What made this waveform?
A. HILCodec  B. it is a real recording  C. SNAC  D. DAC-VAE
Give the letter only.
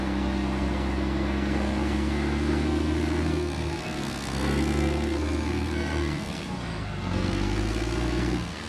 C